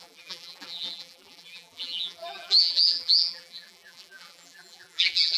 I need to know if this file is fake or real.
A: fake